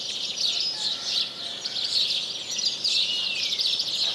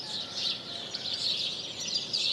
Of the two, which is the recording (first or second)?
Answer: first